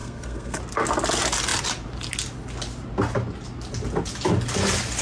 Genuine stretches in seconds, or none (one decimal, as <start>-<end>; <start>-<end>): 0.6-5.0